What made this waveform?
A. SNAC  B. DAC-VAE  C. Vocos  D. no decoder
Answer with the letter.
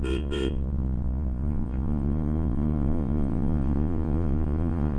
C